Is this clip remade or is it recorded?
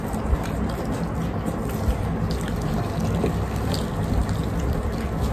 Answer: recorded